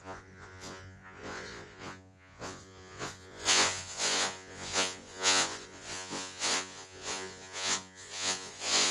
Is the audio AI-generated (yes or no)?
yes